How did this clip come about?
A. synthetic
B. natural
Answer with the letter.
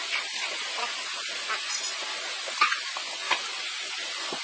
B